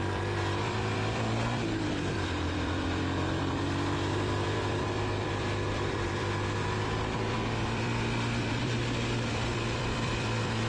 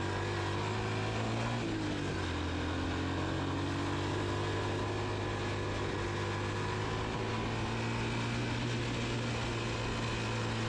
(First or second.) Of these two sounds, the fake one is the first